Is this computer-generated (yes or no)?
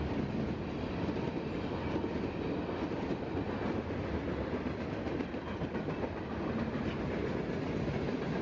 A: no